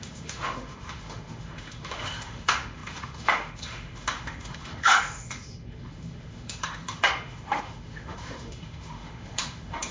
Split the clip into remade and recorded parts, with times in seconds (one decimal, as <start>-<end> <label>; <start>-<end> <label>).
0.0-9.9 remade